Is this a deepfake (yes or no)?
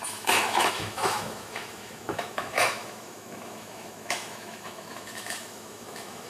yes